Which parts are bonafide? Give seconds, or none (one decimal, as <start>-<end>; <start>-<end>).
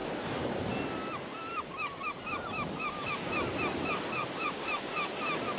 0.6-1.4; 3.5-5.6